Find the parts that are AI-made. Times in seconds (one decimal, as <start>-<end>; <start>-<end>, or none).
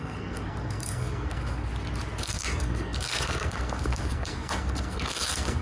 0.0-1.7; 2.2-5.6